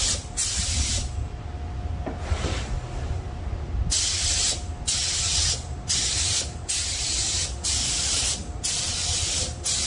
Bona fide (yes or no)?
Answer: yes